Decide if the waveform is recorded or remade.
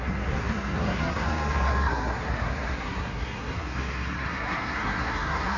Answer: remade